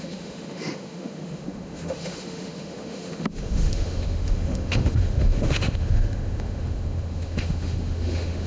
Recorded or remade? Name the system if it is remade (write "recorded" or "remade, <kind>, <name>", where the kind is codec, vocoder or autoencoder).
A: remade, autoencoder, DAC-VAE